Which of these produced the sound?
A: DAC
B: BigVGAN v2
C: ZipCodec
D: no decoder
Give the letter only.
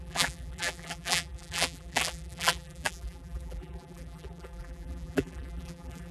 B